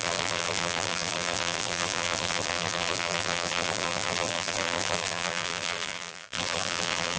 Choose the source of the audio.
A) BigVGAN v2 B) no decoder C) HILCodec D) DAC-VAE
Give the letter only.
A